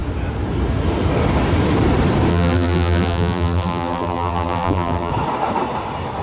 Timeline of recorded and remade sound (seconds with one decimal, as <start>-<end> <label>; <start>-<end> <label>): 0.0-2.3 recorded; 2.3-5.1 remade; 5.1-6.2 recorded